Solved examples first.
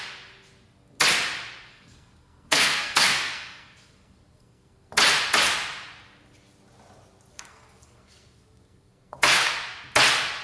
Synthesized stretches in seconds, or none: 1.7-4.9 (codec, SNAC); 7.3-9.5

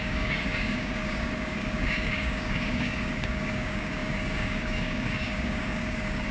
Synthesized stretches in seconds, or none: 0.0-6.3 (codec, DAC)

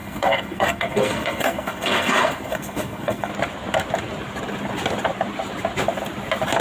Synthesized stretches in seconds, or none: 0.0-3.3 (codec, SNAC)